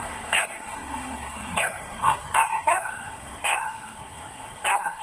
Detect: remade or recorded remade